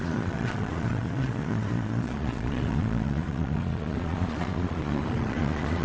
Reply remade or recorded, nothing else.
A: remade